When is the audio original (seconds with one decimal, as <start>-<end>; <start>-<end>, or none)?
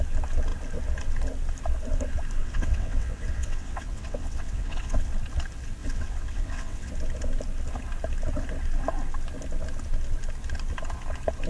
0.0-2.4; 5.1-5.8; 6.9-11.5